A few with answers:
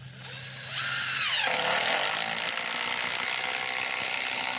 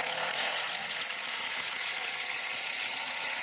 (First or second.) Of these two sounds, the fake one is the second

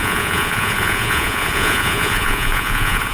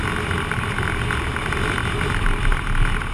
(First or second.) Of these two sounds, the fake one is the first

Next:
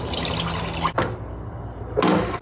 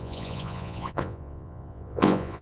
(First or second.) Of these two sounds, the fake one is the second